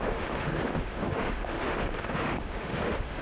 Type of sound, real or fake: fake